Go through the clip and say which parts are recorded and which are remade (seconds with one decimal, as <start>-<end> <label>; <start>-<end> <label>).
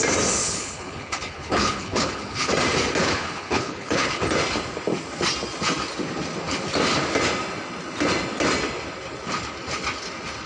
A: 0.0-0.4 recorded; 0.4-2.5 remade; 2.5-3.0 recorded; 3.0-4.2 remade; 4.2-10.5 recorded